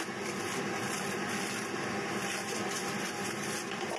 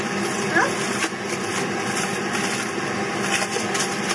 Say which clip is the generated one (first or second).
second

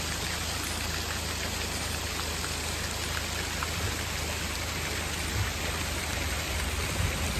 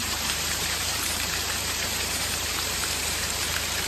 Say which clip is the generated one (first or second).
second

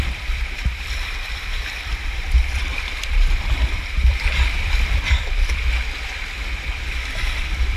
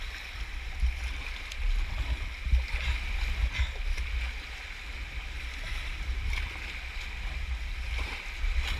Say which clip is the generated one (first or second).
first